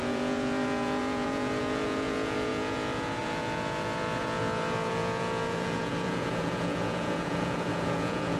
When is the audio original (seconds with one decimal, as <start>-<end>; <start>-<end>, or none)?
none